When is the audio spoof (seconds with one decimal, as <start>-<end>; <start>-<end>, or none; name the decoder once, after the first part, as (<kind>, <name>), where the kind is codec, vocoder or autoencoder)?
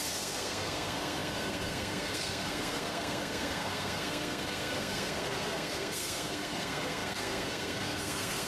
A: 0.0-8.5 (codec, SNAC)